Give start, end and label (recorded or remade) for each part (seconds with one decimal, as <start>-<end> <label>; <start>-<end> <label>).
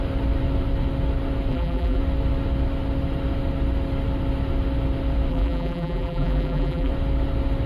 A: 0.0-1.5 recorded; 1.5-2.0 remade; 2.0-5.3 recorded; 5.3-6.9 remade; 6.9-7.7 recorded